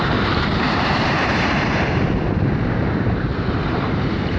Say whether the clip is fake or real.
fake